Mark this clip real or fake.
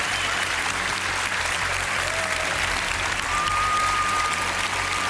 real